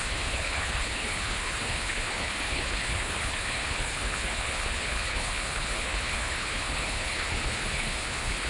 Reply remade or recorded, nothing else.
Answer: remade